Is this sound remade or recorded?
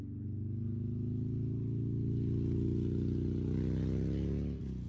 recorded